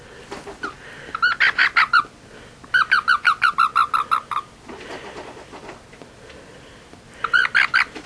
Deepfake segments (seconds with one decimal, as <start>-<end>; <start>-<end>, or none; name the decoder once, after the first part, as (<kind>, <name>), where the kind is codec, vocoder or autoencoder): none

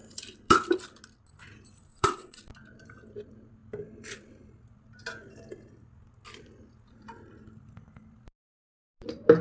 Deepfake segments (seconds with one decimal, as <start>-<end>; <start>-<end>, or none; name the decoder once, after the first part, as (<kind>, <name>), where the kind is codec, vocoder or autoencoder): 1.9-2.4 (vocoder, WaveNeXt)

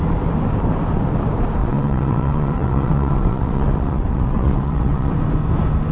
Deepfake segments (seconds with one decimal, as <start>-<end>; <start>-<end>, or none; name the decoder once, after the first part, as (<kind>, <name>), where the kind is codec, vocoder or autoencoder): 1.6-5.1 (vocoder, WaveNeXt)

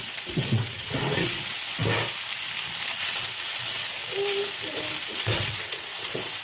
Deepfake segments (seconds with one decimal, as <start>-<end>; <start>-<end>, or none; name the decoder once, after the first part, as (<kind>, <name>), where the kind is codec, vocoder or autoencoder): 0.0-1.8 (vocoder, WaveNeXt); 2.9-4.0; 5.1-6.4